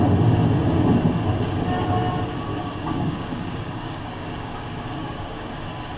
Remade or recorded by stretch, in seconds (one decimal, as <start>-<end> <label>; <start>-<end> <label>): 0.0-2.5 recorded; 2.5-5.5 remade; 5.5-6.0 recorded